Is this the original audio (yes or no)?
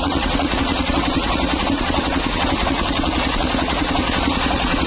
no